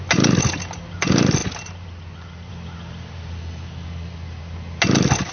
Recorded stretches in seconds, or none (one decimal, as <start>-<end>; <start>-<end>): 0.0-5.3